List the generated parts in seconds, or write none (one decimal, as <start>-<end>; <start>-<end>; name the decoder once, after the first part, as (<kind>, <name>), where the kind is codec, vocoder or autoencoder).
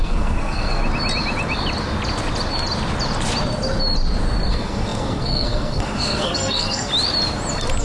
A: 0.0-0.8 (codec, SNAC); 4.5-6.9